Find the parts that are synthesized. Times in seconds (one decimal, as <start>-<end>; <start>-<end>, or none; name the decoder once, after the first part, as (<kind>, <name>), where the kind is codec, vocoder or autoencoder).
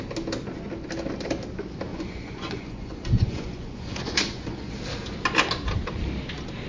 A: 1.9-4.7 (vocoder, Vocos)